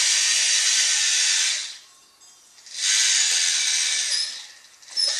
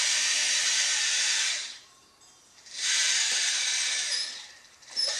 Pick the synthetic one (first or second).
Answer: second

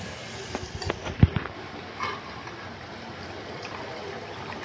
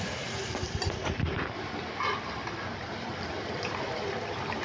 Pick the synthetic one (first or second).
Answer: second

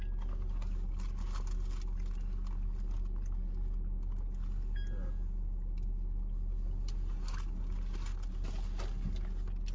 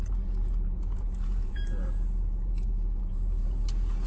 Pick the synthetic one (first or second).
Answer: second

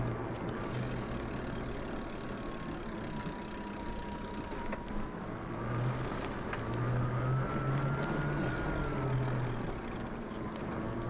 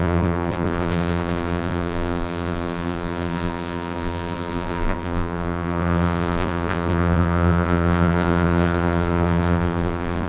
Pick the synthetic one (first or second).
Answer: second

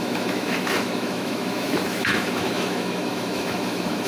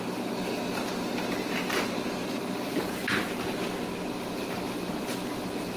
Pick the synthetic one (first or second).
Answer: first